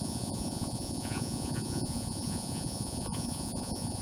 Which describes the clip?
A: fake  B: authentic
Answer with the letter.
A